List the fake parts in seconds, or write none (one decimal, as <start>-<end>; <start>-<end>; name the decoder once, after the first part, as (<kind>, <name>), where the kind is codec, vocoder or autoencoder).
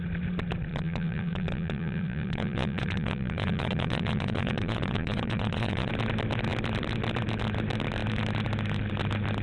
0.7-5.9 (vocoder, Vocos)